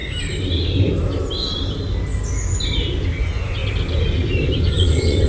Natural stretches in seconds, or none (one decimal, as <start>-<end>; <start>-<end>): 0.0-3.2; 3.6-4.6